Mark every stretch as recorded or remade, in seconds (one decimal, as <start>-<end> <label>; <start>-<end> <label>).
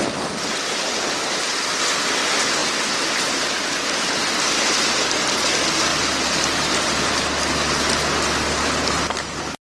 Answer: 0.0-9.6 recorded